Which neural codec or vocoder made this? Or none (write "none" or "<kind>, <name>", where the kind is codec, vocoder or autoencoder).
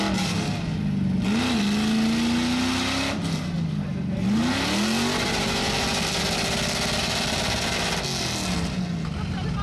none